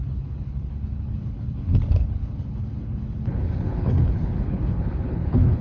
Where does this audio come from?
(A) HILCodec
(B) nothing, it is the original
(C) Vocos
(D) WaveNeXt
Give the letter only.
A